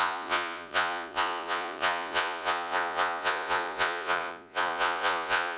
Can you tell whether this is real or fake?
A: fake